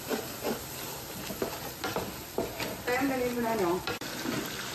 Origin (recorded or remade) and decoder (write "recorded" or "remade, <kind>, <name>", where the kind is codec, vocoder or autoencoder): recorded